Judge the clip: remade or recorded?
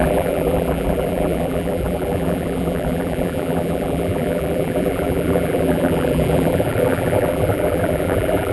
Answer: remade